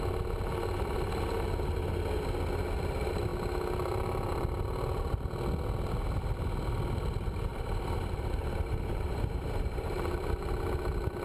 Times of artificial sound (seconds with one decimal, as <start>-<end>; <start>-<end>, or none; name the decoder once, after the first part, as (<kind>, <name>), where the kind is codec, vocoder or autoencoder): 7.5-10.5 (vocoder, BigVGAN v2)